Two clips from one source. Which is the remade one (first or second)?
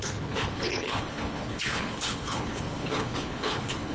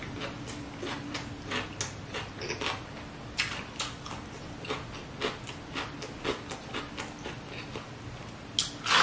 first